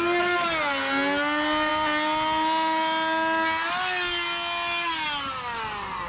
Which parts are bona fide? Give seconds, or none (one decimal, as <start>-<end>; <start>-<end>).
0.0-6.1